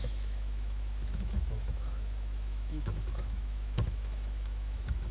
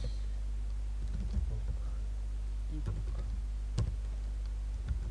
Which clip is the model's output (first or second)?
first